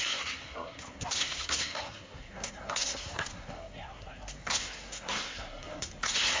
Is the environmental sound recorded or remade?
remade